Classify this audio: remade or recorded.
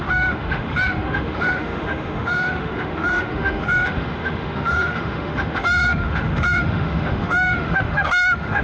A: remade